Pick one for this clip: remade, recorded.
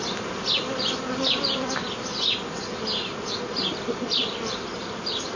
recorded